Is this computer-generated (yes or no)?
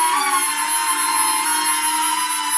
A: no